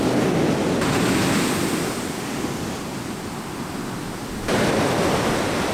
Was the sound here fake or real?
real